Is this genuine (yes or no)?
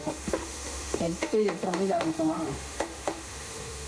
no